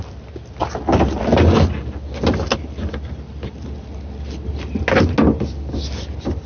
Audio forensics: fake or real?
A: real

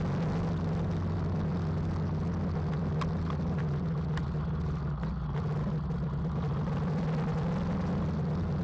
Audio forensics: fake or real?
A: real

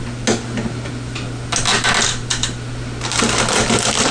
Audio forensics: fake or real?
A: real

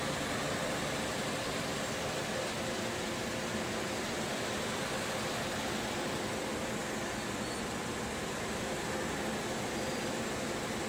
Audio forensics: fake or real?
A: real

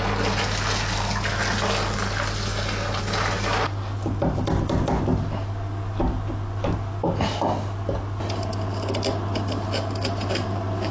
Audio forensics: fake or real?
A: real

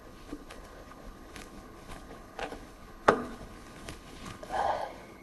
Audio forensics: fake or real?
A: fake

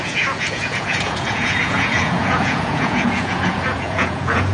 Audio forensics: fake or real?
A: fake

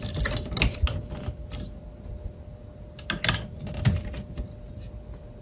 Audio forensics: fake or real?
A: real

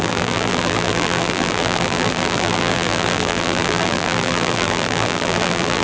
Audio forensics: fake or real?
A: fake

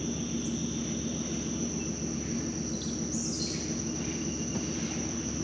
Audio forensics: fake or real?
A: real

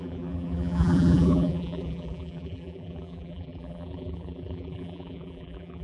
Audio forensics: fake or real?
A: fake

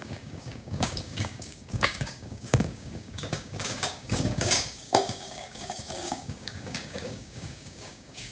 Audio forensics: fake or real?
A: fake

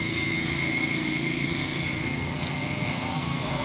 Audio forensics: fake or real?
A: fake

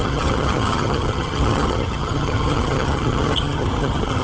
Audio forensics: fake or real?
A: fake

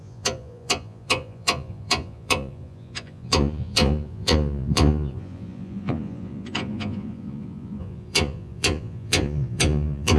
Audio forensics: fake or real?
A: fake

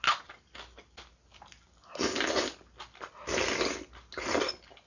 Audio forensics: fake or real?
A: real